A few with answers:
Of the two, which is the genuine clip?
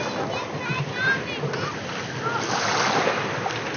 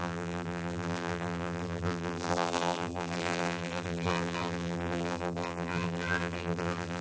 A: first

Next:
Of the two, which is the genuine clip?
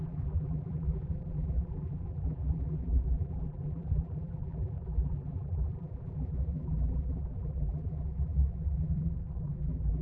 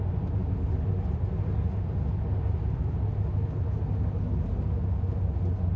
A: second